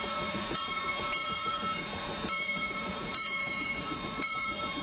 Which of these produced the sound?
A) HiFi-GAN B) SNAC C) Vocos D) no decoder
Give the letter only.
C